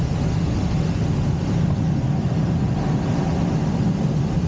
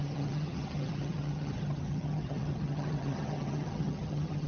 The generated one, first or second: second